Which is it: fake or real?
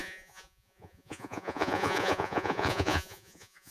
fake